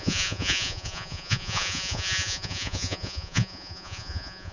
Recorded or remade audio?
remade